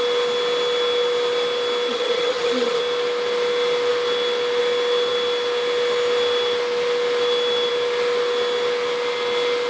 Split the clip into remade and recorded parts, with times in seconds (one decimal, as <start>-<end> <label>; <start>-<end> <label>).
0.0-1.9 recorded; 1.9-2.8 remade; 2.8-9.7 recorded